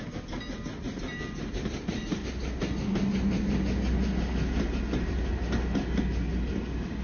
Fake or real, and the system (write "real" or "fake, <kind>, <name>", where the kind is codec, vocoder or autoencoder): real